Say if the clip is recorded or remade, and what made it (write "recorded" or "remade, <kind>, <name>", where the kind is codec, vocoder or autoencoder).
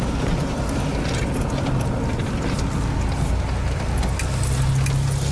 recorded